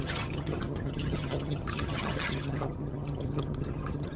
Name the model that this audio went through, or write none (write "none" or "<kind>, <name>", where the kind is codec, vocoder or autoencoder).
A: vocoder, HiFi-GAN